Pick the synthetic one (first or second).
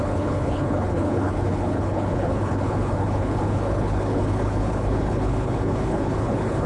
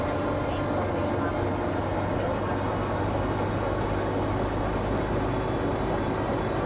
first